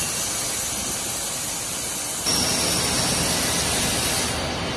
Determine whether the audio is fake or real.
real